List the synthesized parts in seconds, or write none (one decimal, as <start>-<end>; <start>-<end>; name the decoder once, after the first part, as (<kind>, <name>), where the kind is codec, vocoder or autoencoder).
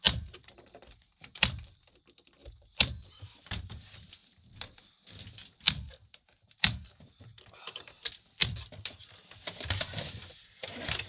0.0-2.4 (vocoder, BigVGAN v2); 3.1-11.1